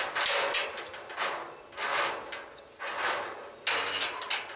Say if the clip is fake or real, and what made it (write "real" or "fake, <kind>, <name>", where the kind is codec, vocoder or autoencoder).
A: real